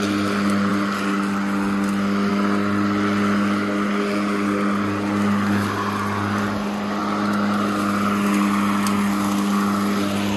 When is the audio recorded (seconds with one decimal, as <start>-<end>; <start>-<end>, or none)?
0.0-10.4